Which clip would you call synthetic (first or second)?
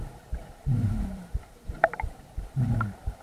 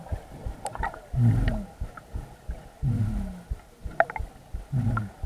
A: first